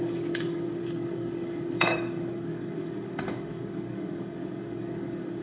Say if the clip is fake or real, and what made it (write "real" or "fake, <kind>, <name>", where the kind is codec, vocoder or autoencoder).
fake, codec, DAC